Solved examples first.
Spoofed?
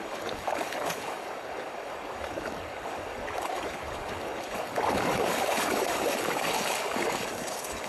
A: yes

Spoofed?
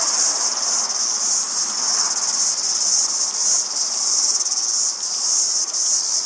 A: no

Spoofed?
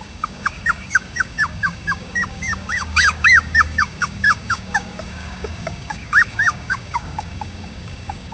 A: yes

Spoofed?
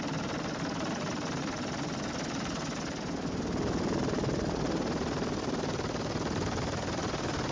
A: no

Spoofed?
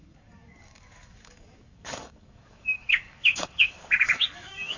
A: yes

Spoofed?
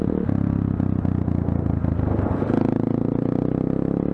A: no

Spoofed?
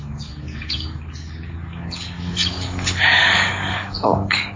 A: yes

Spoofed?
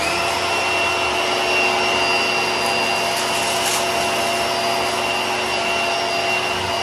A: no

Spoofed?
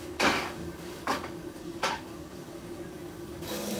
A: yes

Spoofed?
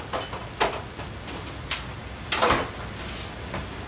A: no